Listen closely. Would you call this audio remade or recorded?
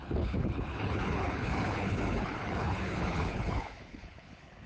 remade